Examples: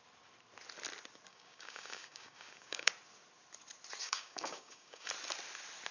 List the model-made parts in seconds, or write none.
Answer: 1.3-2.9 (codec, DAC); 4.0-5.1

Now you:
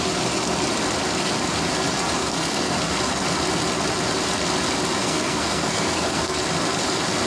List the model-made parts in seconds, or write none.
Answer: 2.2-2.8 (codec, SNAC); 5.0-6.4